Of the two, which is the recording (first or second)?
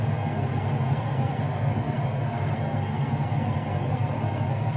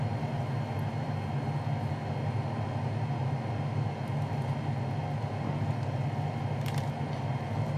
second